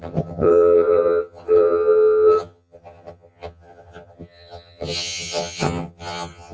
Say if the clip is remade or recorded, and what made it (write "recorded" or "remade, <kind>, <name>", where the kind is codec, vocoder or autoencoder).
remade, vocoder, HiFi-GAN